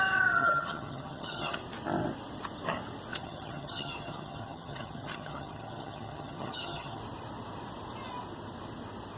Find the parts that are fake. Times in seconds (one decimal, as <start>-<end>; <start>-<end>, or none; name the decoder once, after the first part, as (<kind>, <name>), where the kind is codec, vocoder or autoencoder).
0.4-1.6 (vocoder, HiFi-GAN); 3.1-7.0